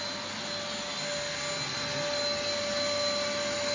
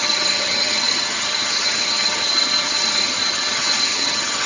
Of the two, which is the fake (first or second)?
second